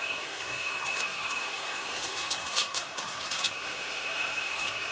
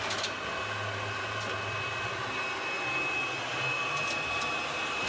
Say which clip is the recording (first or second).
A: second